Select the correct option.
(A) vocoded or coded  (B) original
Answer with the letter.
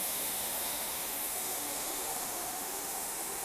A